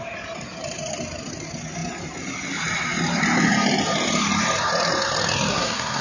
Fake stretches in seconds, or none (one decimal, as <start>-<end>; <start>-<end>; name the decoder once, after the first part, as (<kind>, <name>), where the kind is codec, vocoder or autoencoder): 5.5-6.0 (codec, SNAC)